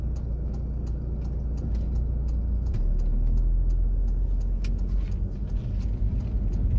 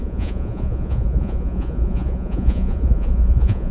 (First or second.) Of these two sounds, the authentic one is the first